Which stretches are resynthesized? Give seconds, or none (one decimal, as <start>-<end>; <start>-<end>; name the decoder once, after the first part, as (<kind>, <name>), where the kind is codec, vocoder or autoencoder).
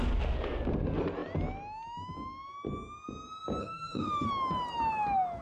3.6-4.3 (autoencoder, DAC-VAE)